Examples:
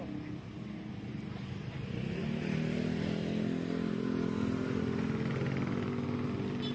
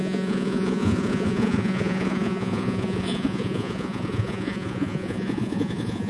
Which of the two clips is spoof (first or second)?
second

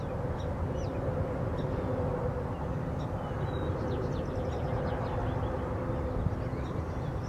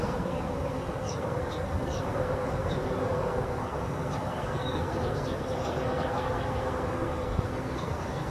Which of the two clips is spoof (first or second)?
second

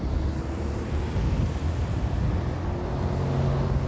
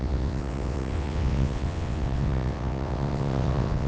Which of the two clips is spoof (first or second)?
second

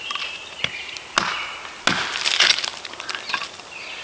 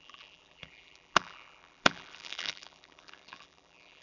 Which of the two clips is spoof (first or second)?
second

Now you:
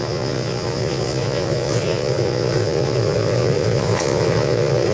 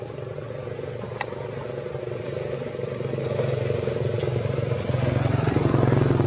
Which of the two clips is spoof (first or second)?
first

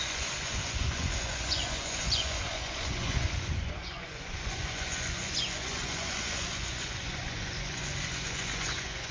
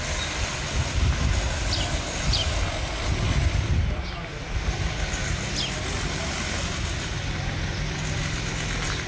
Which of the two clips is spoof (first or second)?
first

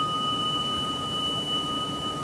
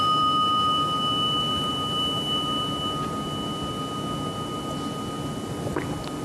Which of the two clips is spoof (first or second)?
first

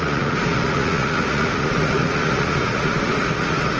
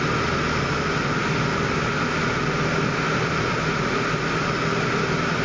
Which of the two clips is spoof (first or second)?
first